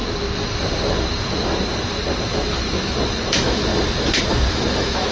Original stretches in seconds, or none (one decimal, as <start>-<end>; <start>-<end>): 0.0-2.2; 3.7-4.5